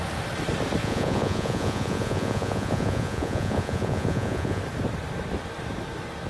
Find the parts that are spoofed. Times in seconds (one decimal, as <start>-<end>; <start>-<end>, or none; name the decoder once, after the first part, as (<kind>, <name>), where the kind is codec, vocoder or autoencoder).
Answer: 0.8-4.6 (vocoder, Vocos)